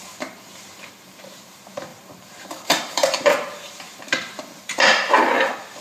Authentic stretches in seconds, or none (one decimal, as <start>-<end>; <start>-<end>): none